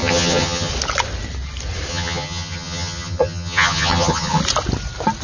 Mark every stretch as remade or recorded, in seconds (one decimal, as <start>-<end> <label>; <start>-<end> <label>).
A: 0.0-0.7 remade; 0.7-1.9 recorded; 1.9-4.4 remade; 4.4-5.2 recorded